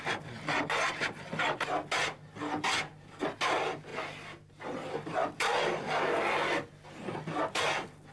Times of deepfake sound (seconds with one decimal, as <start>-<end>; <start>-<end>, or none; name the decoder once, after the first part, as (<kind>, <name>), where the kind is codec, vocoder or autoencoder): none